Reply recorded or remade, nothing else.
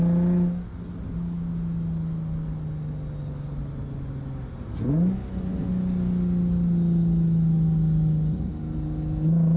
recorded